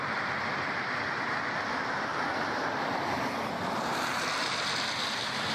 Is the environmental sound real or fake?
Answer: fake